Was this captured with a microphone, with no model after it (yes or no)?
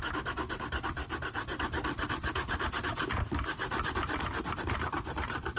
yes